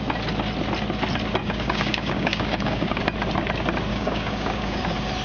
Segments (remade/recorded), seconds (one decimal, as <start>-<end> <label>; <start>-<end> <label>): 0.0-1.4 recorded; 1.4-3.0 remade; 3.0-3.9 recorded; 3.9-4.8 remade; 4.8-5.2 recorded